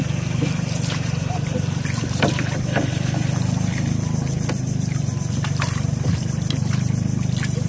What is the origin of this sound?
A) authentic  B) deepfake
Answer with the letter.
A